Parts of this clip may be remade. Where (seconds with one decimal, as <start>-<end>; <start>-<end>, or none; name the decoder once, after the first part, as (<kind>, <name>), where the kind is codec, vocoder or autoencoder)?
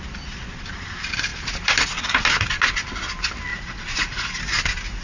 3.5-4.4 (vocoder, Vocos)